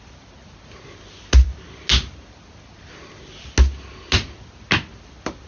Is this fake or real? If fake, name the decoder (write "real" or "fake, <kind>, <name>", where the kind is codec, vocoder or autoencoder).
real